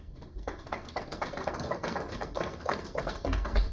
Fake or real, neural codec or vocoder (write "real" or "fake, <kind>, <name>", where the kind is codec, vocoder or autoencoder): fake, codec, SNAC